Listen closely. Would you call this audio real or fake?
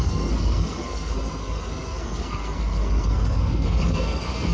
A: fake